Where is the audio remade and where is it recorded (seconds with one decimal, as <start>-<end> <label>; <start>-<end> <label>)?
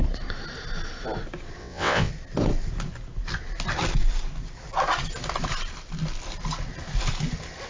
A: 0.0-1.6 recorded; 1.6-2.1 remade; 2.1-7.7 recorded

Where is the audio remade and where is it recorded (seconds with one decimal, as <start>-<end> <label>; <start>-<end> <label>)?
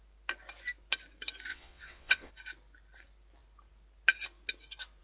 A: 0.0-1.5 recorded; 1.5-2.3 remade; 2.3-5.0 recorded